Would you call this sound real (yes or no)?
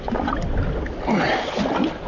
yes